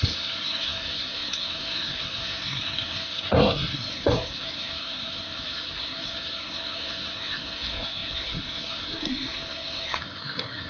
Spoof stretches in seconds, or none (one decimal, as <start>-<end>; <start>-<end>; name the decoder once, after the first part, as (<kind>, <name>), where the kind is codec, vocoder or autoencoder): 0.0-10.7 (codec, SNAC)